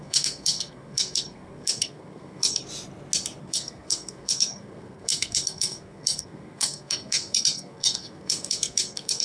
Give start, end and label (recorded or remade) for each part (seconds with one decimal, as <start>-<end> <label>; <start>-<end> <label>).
0.0-2.6 remade; 2.6-3.4 recorded; 3.4-9.2 remade